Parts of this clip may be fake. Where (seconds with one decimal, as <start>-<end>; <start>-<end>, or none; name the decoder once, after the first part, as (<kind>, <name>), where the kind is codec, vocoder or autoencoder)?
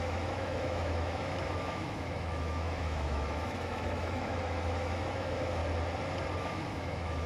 0.0-5.6 (autoencoder, DAC-VAE); 6.4-7.3